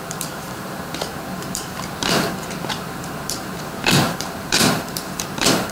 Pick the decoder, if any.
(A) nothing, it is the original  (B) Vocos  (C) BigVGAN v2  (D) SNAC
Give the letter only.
C